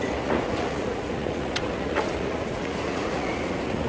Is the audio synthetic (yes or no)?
yes